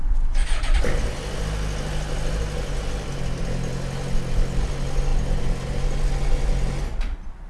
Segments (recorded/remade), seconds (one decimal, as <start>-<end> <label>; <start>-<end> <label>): 0.0-7.5 recorded